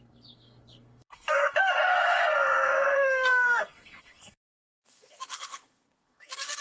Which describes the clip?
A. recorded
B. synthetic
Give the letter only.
B